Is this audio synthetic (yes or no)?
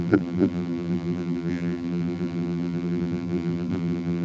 yes